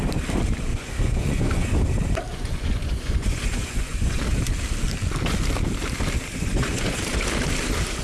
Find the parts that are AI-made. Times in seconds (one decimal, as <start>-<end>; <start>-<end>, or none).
0.7-1.8; 2.3-4.2; 6.3-7.0

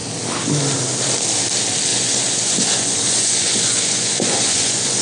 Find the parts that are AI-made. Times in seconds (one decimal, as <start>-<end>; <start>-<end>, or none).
1.9-5.0

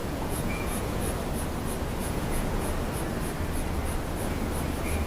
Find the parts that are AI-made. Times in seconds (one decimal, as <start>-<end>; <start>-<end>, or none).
0.0-1.0; 2.0-2.7

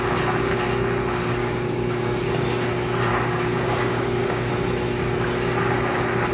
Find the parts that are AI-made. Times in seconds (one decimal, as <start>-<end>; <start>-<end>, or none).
1.4-2.2; 3.1-4.5

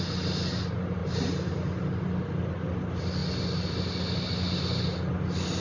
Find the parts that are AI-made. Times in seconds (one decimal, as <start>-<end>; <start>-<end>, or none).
none

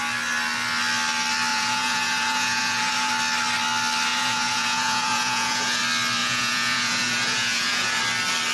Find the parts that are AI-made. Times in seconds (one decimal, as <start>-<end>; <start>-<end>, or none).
1.5-3.1; 4.1-5.8; 6.2-8.0